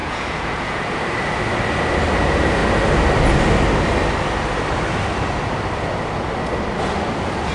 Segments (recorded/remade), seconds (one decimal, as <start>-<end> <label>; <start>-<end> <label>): 0.0-0.8 remade; 0.8-7.5 recorded